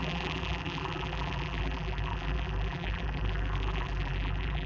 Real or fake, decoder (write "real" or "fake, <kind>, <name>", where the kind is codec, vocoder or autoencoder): fake, vocoder, BigVGAN v2